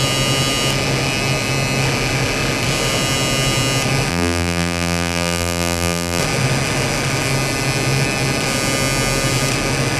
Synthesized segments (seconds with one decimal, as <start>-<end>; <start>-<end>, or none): 4.1-6.2